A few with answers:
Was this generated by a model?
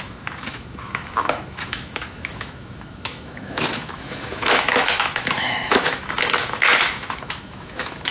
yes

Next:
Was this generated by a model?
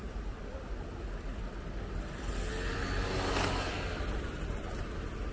no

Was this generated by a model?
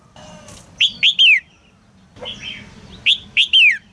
no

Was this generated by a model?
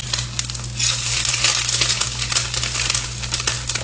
no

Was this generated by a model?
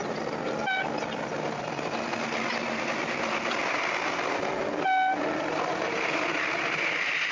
no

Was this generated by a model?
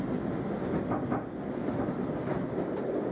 no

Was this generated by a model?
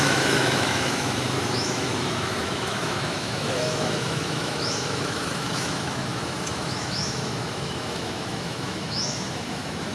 yes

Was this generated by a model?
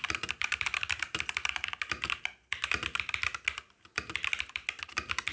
no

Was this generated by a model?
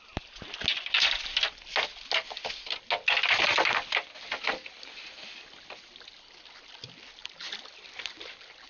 no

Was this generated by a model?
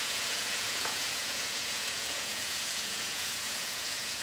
yes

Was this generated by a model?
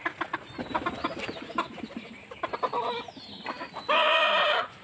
no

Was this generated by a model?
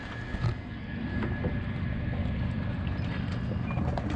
no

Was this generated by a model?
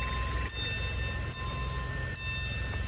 no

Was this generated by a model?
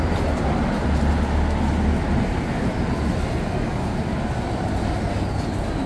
no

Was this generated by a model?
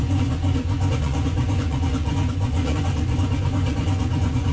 yes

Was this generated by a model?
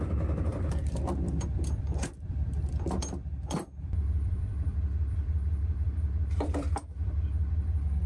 yes